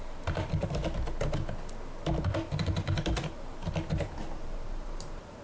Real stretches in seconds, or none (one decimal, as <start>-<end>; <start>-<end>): 0.8-2.8